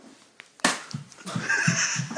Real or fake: real